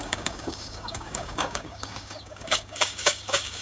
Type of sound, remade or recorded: remade